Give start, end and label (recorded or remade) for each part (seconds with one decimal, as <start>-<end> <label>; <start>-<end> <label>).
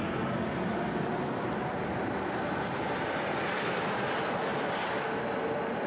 0.0-5.9 recorded